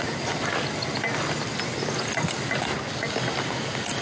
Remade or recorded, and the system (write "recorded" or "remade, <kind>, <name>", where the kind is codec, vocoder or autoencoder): recorded